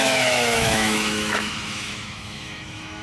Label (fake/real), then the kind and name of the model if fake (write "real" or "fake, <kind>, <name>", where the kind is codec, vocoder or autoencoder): fake, autoencoder, DAC-VAE